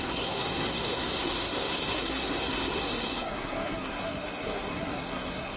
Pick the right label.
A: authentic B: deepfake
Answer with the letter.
B